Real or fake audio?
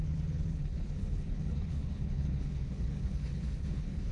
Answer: fake